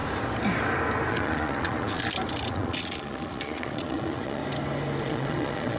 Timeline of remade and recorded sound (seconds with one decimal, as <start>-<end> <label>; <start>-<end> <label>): 0.0-1.1 recorded; 1.1-2.0 remade; 2.0-2.5 recorded; 2.5-4.4 remade; 4.4-5.0 recorded; 5.0-5.8 remade